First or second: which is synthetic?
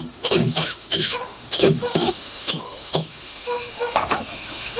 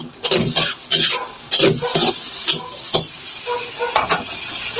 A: first